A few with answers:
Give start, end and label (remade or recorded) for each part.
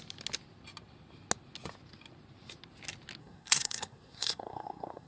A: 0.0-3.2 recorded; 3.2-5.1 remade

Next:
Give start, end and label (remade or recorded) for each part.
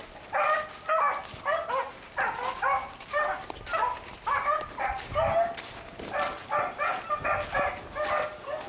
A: 0.0-8.7 recorded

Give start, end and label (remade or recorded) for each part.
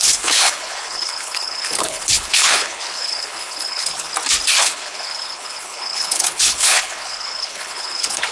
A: 0.0-4.1 remade; 4.1-4.6 recorded; 4.6-8.3 remade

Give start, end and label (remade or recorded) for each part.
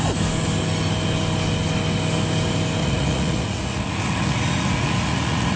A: 0.0-2.8 recorded; 2.8-5.6 remade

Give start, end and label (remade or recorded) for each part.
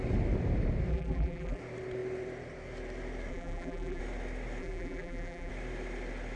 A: 0.0-0.9 recorded; 0.9-1.6 remade; 1.6-3.3 recorded; 3.3-4.0 remade; 4.0-4.6 recorded; 4.6-5.5 remade; 5.5-6.4 recorded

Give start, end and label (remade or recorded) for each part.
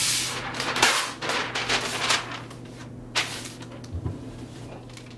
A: 0.0-0.9 remade; 0.9-5.2 recorded